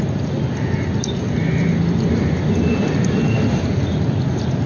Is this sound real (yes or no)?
yes